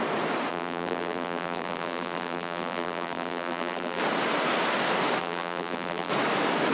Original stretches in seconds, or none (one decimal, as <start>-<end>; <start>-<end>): 0.0-0.5; 4.0-5.2; 6.1-6.7